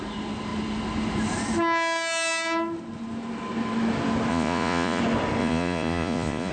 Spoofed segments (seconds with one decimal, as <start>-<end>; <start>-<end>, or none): 4.3-5.0; 5.4-6.5